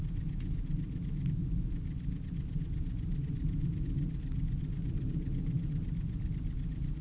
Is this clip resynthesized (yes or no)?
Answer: no